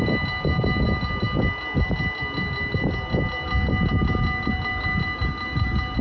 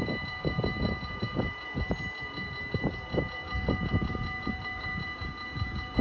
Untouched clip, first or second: first